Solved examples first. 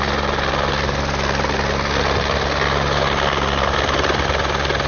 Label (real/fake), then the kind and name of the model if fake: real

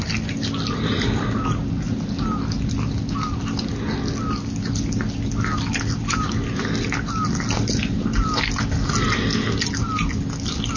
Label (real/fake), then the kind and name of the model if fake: real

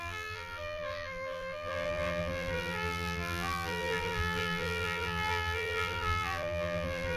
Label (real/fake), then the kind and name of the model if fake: fake, vocoder, BigVGAN v2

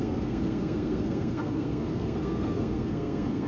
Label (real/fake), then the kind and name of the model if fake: fake, codec, SNAC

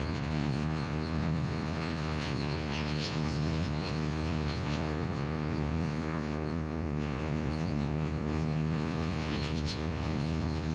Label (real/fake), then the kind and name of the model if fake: fake, vocoder, Vocos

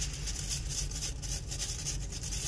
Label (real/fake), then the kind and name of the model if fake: real